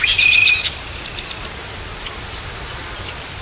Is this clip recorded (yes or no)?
no